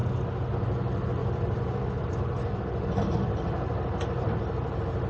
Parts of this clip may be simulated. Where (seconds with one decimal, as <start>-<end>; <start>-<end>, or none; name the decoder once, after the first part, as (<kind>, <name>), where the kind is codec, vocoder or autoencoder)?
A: 1.2-2.6 (vocoder, BigVGAN v2)